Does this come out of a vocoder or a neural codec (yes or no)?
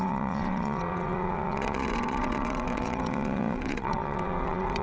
yes